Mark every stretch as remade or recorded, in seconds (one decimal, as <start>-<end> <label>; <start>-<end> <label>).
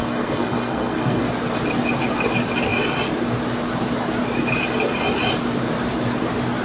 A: 0.0-1.2 remade; 1.2-6.6 recorded